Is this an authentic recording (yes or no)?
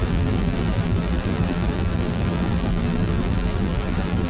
no